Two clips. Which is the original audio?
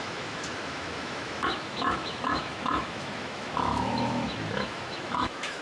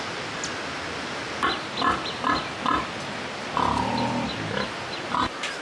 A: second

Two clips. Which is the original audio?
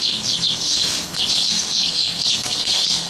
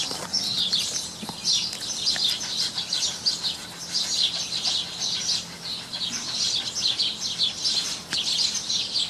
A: second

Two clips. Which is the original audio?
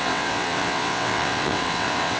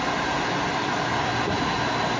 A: second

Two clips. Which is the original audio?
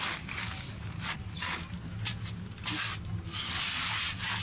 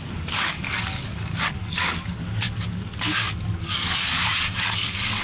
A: first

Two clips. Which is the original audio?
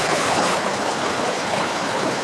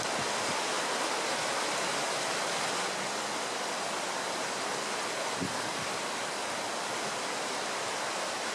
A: second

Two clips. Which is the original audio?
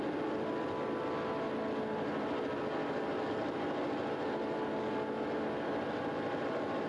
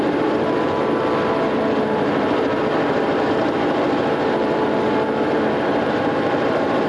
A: first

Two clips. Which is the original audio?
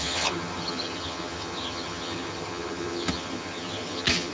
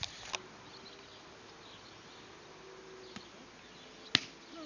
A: second